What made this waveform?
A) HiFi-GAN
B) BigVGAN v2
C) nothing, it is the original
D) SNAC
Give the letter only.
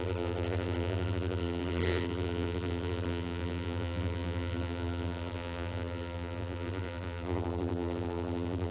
B